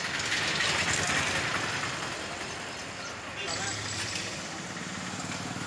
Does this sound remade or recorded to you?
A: recorded